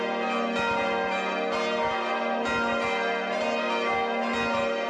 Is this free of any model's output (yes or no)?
yes